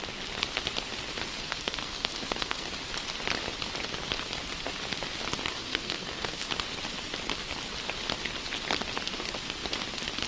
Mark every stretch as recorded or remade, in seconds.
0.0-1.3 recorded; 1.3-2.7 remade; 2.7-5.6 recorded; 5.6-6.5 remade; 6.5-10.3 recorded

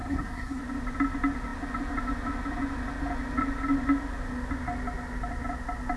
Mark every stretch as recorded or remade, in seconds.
0.0-0.6 remade; 0.6-6.0 recorded

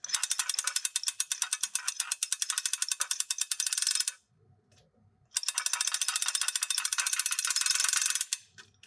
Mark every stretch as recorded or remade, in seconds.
0.0-8.9 recorded

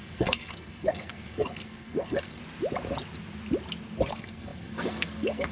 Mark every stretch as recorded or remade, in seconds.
0.0-2.4 remade; 2.4-4.1 recorded; 4.1-5.5 remade

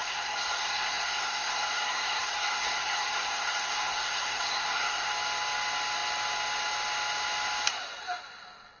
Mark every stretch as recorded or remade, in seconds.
0.0-5.1 remade; 5.1-8.8 recorded

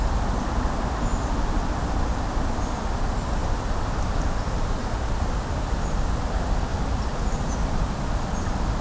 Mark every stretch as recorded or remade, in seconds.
0.0-8.8 recorded